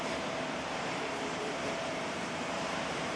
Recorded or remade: remade